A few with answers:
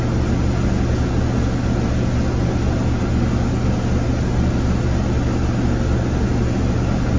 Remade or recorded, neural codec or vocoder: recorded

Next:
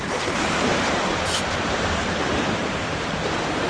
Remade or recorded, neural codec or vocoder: remade, vocoder, BigVGAN v2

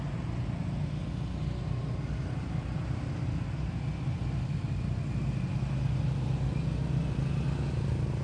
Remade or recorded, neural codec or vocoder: recorded